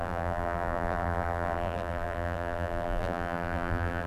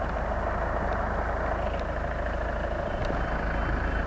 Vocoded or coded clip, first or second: first